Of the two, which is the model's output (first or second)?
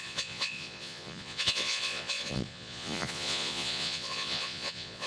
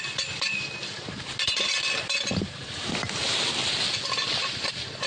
first